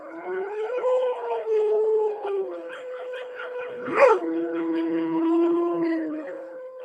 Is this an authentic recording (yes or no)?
no